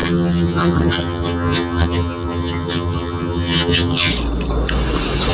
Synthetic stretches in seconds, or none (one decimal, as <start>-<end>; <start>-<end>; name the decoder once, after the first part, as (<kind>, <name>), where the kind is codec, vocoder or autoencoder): 0.0-4.1 (vocoder, HiFi-GAN)